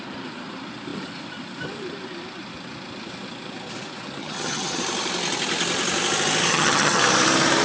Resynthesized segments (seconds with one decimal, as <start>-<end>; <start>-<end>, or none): 4.2-4.8; 6.5-7.0